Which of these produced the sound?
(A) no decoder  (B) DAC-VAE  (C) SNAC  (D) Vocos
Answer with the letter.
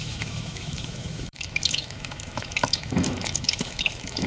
B